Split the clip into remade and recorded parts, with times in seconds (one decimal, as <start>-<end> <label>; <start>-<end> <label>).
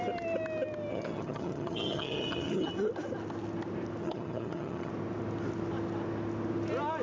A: 0.0-0.9 recorded; 0.9-2.7 remade; 2.7-4.0 recorded; 4.0-4.9 remade; 4.9-7.0 recorded